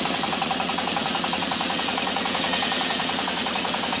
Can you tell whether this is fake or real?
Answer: fake